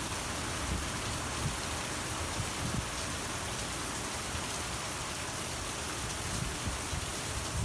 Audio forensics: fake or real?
real